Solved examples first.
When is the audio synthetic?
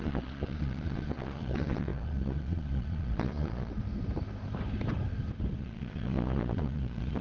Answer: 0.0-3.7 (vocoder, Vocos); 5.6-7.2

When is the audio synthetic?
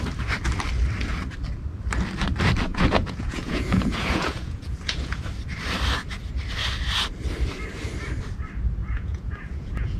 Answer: 2.7-5.2 (vocoder, Vocos); 8.8-10.0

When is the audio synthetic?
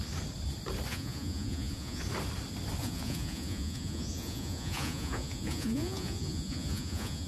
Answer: 0.9-2.0 (vocoder, Vocos); 2.8-7.3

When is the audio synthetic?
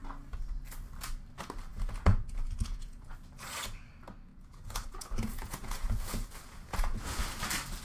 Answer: 1.7-3.1 (vocoder, Vocos); 4.3-7.2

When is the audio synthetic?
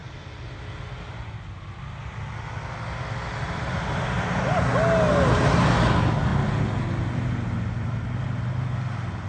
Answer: none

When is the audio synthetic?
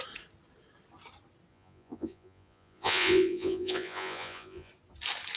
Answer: 1.5-4.7 (vocoder, Vocos)